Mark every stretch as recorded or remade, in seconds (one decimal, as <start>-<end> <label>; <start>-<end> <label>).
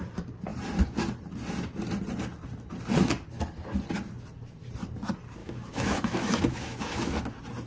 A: 0.0-5.4 recorded; 5.4-7.1 remade; 7.1-7.7 recorded